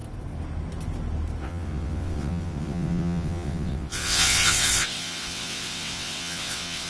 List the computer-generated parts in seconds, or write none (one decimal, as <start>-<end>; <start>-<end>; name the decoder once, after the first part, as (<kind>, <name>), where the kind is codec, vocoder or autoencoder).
1.4-6.9 (vocoder, WaveNeXt)